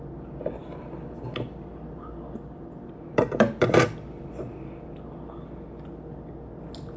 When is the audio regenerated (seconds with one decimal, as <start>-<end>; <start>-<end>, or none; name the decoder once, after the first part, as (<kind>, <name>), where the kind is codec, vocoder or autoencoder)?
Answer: 0.6-4.8 (vocoder, BigVGAN v2)